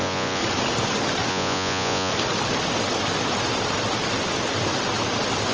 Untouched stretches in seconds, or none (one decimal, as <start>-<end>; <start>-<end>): 0.4-1.3; 2.1-5.5